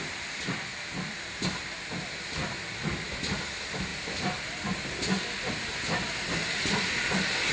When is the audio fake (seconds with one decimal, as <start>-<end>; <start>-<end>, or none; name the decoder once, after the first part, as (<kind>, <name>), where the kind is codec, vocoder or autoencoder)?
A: none